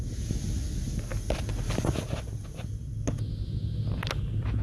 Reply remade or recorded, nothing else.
recorded